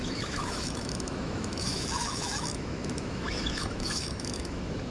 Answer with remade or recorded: remade